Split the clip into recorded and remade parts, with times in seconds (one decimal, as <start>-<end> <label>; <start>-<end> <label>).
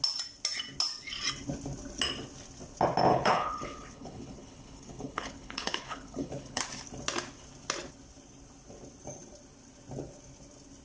0.0-3.1 recorded; 3.1-6.6 remade; 6.6-10.8 recorded